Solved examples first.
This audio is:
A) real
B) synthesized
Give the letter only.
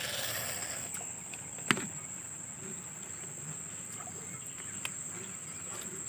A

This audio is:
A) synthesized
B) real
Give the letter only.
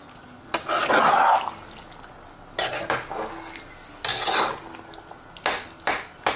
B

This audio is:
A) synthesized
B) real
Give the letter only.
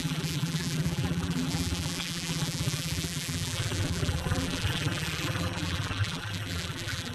A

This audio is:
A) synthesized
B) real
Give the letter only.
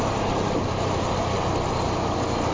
B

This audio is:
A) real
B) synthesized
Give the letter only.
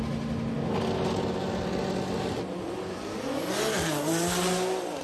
A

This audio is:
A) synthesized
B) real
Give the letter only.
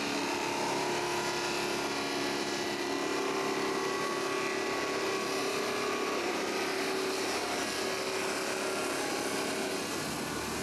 B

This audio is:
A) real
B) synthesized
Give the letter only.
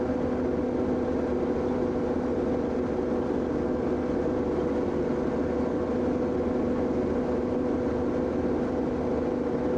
A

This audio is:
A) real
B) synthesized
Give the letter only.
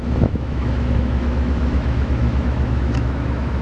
B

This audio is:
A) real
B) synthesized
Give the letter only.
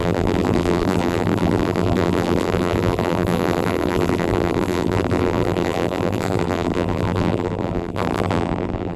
B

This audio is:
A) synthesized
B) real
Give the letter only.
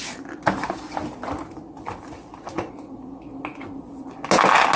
B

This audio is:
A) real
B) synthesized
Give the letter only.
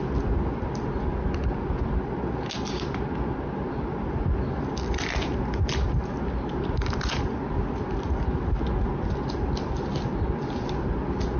A